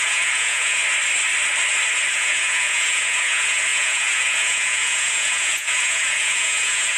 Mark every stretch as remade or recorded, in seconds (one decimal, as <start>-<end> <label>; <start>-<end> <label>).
0.0-0.8 remade; 0.8-2.1 recorded; 2.1-7.0 remade